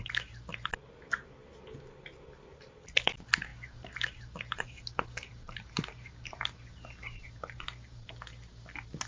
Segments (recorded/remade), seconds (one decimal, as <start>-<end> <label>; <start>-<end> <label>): 0.0-3.5 recorded; 3.5-8.1 remade; 8.1-9.1 recorded